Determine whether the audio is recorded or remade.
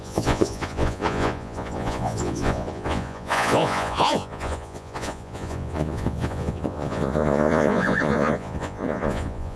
remade